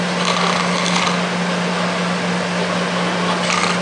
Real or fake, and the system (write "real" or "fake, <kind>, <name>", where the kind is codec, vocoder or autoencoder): real